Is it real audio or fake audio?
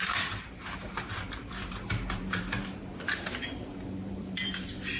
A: fake